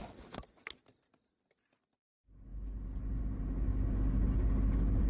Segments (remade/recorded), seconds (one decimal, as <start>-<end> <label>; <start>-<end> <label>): 0.0-5.1 recorded